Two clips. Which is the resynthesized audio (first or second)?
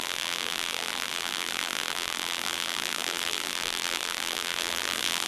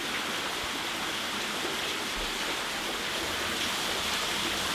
first